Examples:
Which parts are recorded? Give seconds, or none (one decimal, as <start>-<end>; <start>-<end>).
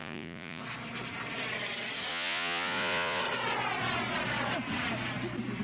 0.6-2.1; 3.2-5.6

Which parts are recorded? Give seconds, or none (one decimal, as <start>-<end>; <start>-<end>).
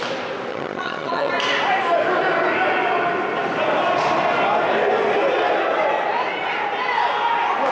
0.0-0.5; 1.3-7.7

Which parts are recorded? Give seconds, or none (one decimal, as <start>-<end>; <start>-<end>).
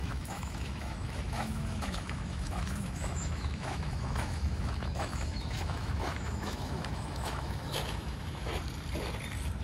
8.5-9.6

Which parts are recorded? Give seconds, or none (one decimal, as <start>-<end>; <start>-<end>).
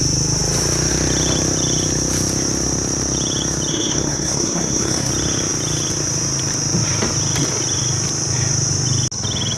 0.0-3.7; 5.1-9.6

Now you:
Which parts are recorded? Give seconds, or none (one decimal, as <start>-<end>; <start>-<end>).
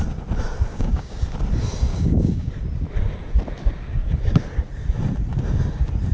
0.0-0.7; 1.2-1.9; 2.5-6.1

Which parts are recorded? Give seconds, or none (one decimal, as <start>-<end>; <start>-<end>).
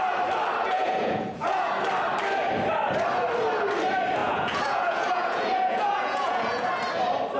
0.0-0.6; 1.7-4.2; 6.7-7.4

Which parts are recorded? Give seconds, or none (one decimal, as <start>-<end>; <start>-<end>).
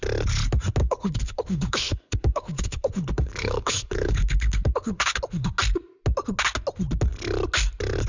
0.0-0.8; 5.2-8.1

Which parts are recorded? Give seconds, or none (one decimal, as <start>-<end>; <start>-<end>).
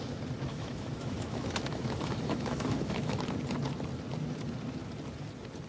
0.0-0.5; 3.2-5.7